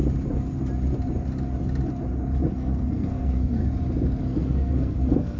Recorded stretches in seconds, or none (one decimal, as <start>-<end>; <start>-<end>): 0.0-2.5; 3.6-4.2